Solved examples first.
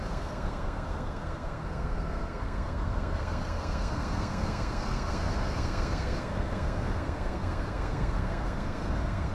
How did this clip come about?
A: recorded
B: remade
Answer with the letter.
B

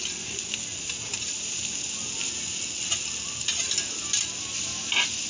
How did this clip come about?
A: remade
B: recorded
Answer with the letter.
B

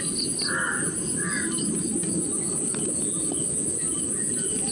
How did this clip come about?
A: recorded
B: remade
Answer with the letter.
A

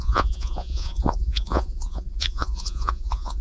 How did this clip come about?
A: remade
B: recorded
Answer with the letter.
A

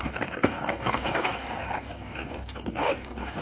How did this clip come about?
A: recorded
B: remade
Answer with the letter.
B